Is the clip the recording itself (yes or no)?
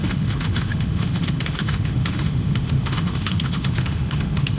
no